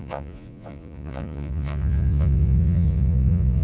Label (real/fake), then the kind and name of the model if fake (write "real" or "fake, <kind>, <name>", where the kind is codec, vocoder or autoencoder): fake, vocoder, Vocos